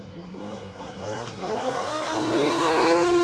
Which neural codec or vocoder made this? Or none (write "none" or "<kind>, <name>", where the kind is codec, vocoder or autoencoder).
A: codec, SNAC